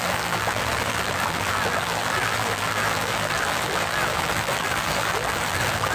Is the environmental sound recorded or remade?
remade